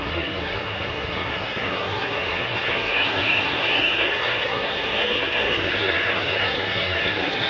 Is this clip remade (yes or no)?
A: yes